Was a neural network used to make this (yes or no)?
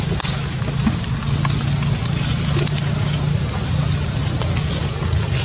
no